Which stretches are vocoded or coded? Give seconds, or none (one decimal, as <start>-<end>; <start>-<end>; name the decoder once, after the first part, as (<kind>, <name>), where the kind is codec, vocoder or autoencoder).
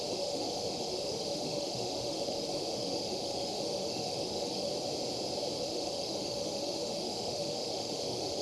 0.0-4.7 (autoencoder, DAC-VAE); 5.6-8.4